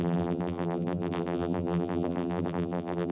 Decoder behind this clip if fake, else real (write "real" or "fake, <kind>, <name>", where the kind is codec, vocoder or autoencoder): fake, vocoder, BigVGAN v2